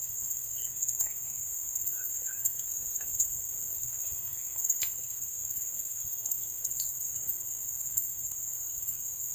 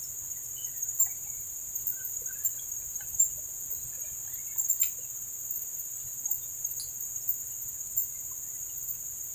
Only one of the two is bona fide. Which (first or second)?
second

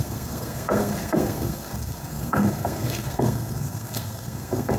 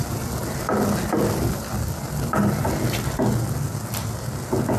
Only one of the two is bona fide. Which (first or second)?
second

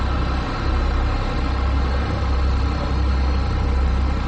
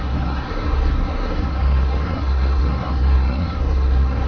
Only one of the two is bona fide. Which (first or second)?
first